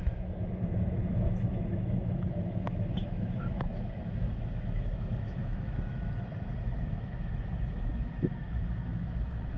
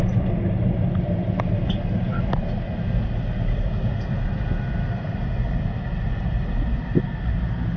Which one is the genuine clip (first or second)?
second